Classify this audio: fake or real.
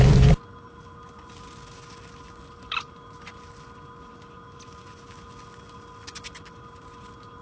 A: real